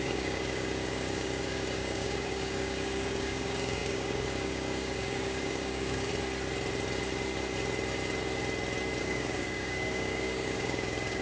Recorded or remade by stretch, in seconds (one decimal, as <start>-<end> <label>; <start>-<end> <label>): 0.0-6.1 remade; 6.1-9.0 recorded; 9.0-11.2 remade